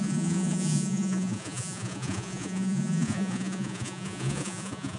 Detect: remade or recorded remade